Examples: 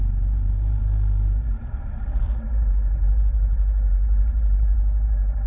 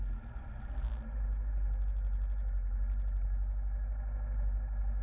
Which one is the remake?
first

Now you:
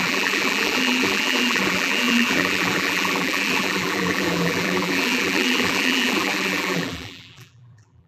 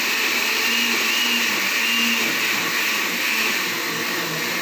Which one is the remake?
first